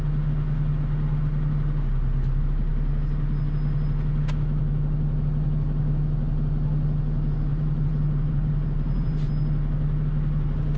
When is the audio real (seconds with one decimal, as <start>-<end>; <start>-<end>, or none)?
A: 0.0-7.5; 9.3-10.8